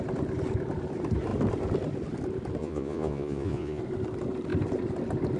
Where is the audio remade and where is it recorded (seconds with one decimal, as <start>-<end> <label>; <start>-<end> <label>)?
0.0-2.6 recorded; 2.6-3.8 remade; 3.8-5.4 recorded